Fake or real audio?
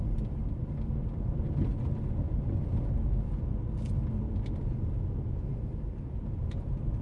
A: real